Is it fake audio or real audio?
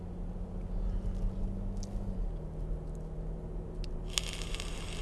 real